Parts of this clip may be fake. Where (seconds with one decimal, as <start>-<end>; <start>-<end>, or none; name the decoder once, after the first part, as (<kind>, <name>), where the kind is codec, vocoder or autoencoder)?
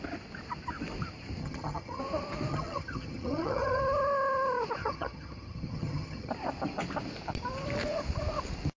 1.4-2.0 (vocoder, HiFi-GAN); 2.5-3.8; 4.8-6.3